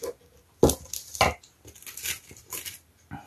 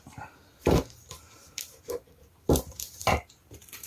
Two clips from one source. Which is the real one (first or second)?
first